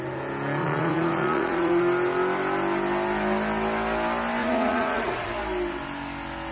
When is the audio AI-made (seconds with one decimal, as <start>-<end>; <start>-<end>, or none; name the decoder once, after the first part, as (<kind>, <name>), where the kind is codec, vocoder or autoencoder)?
0.6-1.8 (vocoder, Vocos); 4.4-5.3